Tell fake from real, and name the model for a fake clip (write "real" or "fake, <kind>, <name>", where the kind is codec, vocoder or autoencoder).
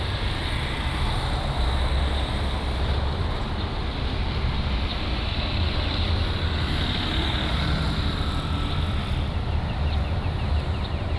real